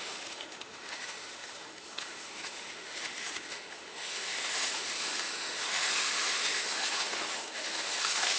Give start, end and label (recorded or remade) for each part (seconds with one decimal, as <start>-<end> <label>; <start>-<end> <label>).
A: 0.0-8.4 remade